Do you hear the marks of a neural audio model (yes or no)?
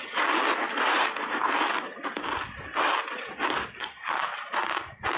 no